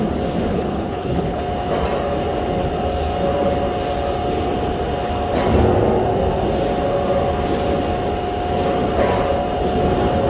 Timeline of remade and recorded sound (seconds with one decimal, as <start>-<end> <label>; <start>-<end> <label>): 0.0-0.5 recorded; 0.5-1.4 remade; 1.4-10.3 recorded